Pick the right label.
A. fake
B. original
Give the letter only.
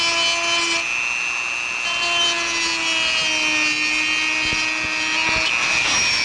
B